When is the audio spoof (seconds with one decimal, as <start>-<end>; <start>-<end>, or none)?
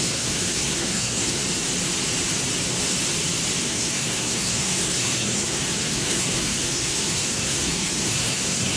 0.0-1.4; 3.6-8.8